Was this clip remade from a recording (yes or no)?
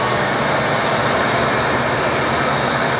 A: yes